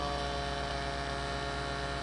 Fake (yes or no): no